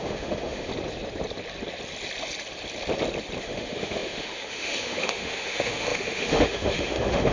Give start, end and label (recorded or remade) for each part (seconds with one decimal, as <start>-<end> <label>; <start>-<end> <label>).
0.0-0.7 remade; 0.7-3.4 recorded; 3.4-7.3 remade